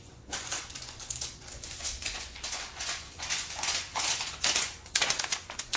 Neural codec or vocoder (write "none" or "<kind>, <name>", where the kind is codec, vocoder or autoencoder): vocoder, Vocos